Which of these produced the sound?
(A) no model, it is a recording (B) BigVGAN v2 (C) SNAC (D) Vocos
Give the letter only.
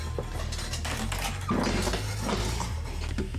A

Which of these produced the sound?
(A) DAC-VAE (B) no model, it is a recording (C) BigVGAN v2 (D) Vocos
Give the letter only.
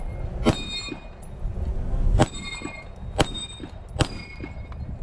B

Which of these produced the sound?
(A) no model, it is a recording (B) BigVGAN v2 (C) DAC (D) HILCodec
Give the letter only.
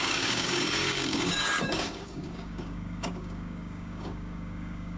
C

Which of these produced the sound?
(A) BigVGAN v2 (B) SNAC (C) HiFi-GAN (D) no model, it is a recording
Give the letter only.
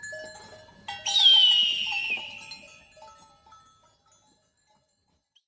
D